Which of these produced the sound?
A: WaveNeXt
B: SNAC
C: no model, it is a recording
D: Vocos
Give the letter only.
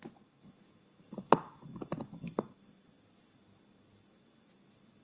C